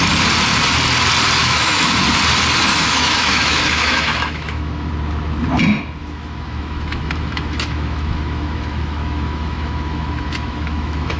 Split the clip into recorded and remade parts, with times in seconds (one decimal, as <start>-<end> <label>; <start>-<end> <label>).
0.0-1.4 recorded; 1.4-2.0 remade; 2.0-2.7 recorded; 2.7-4.9 remade; 4.9-6.0 recorded; 6.0-11.2 remade